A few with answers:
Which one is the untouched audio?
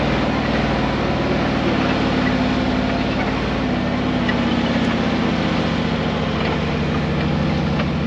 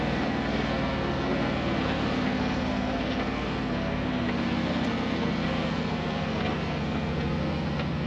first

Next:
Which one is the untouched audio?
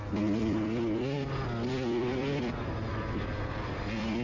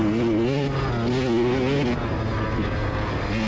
second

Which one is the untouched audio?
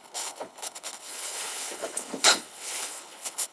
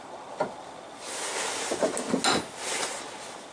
second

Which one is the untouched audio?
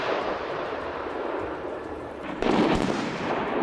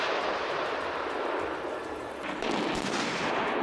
second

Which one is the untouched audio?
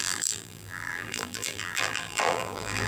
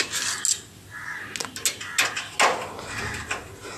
second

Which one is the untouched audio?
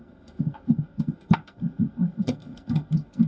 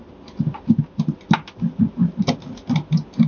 second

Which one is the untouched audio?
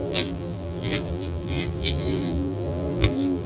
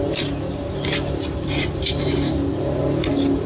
second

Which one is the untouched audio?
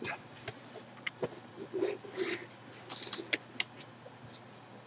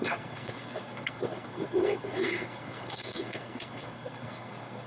first